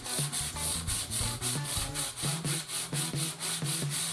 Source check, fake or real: real